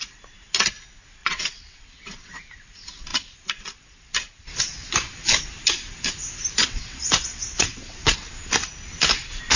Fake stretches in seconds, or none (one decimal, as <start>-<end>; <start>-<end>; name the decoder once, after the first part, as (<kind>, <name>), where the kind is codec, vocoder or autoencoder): 1.2-2.4 (vocoder, WaveNeXt); 6.6-8.3